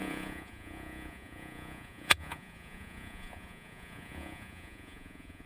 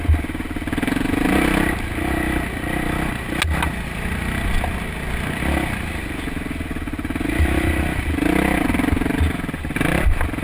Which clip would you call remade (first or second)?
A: first